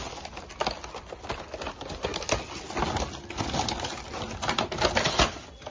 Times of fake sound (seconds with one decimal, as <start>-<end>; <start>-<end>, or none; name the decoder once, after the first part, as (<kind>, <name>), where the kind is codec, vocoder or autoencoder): none